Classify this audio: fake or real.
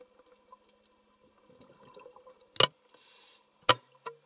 real